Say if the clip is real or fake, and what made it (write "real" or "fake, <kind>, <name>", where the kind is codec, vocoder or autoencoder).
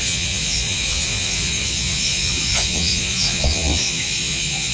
fake, vocoder, Vocos